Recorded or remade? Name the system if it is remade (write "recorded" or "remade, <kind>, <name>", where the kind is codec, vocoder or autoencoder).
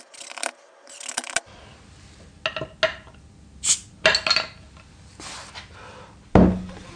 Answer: recorded